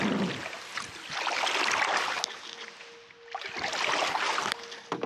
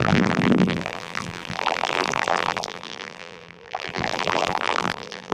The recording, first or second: first